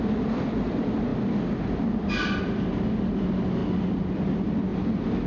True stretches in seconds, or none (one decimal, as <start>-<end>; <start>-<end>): 0.0-3.6; 4.3-4.7